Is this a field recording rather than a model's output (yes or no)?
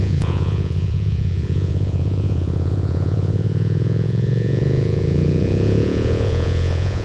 no